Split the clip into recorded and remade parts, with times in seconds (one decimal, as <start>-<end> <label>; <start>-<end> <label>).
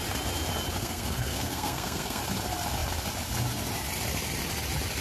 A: 0.0-0.8 recorded; 0.8-2.2 remade; 2.2-5.0 recorded